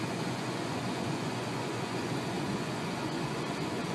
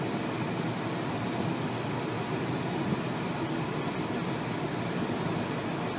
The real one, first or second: second